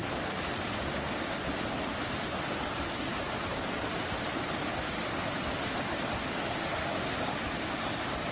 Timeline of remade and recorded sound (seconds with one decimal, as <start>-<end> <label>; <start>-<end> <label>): 0.0-3.1 recorded; 3.1-4.0 remade; 4.0-8.3 recorded